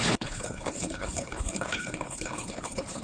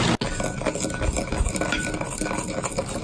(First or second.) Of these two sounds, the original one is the second